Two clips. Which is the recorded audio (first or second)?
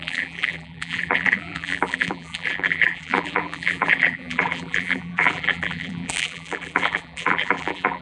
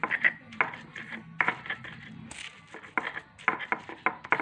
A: second